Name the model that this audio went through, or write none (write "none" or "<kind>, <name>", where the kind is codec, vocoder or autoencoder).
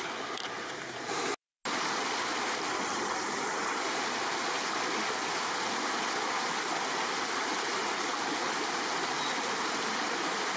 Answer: none